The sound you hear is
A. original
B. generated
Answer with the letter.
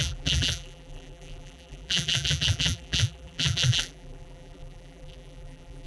B